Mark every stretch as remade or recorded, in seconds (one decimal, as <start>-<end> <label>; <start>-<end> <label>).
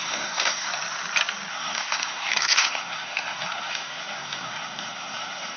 0.0-0.7 remade; 0.7-1.5 recorded; 1.5-5.6 remade